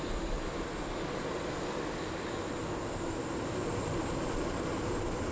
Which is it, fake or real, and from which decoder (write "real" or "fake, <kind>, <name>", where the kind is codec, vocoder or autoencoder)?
real